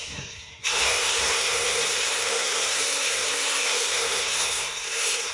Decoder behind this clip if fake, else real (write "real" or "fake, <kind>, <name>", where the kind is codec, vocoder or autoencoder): fake, codec, SNAC